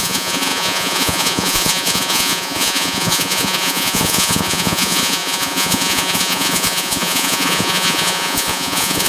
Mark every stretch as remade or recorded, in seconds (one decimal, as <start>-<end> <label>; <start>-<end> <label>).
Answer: 0.0-9.1 remade